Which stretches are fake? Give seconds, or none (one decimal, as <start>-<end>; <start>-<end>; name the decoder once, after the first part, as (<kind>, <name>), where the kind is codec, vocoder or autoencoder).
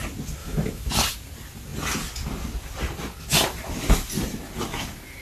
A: 0.4-0.9 (autoencoder, DAC-VAE)